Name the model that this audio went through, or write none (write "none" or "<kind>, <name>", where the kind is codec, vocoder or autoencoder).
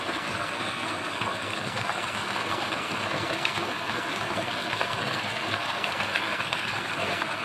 codec, SNAC